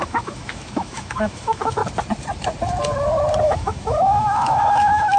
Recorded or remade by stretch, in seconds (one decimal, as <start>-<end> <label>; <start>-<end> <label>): 0.0-1.8 remade; 1.8-3.4 recorded; 3.4-5.2 remade